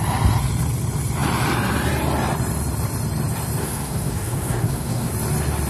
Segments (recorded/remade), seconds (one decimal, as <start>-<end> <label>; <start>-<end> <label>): 0.0-3.6 recorded; 3.6-5.1 remade; 5.1-5.7 recorded